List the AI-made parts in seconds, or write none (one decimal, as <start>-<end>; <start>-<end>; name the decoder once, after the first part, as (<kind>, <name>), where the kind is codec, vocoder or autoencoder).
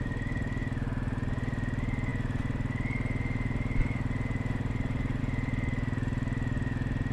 none